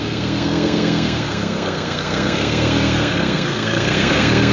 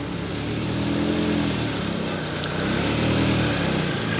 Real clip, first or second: second